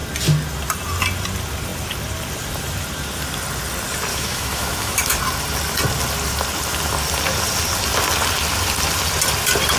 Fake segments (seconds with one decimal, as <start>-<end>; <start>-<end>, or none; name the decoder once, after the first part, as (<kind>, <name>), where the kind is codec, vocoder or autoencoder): 4.1-5.2 (autoencoder, DAC-VAE)